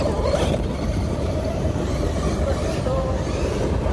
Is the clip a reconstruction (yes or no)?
yes